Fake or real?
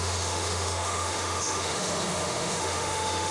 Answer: fake